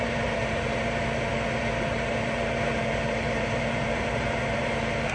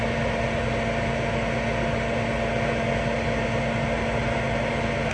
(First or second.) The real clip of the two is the second